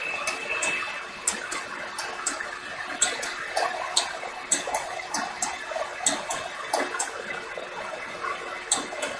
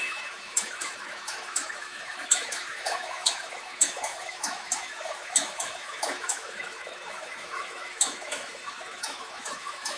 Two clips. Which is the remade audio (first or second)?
second